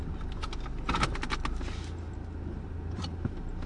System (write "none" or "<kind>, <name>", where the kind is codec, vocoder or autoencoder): none